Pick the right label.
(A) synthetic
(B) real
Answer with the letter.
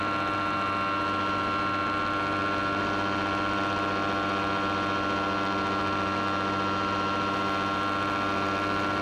B